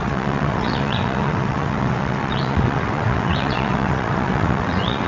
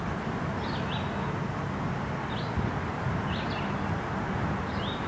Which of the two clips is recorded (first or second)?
second